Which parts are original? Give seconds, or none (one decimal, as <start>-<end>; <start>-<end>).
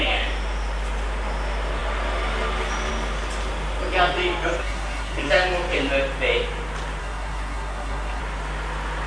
0.0-4.6; 5.3-7.0; 8.2-9.1